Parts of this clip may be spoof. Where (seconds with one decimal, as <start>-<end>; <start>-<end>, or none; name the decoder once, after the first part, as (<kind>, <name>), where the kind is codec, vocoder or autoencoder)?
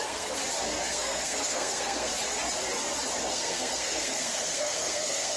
0.0-0.4 (codec, SNAC); 0.9-2.1; 3.3-5.4